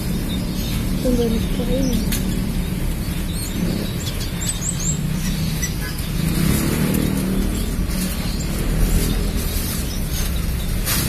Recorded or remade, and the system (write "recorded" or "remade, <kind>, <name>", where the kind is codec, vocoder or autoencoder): recorded